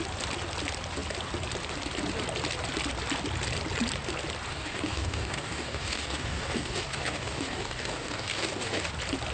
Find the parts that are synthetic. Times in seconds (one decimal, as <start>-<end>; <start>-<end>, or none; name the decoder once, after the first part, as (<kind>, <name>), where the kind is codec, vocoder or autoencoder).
4.5-8.9 (codec, DAC)